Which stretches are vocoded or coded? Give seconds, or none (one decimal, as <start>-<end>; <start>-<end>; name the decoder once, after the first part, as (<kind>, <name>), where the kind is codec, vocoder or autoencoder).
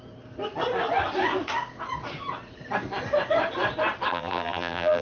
4.1-5.0 (vocoder, BigVGAN v2)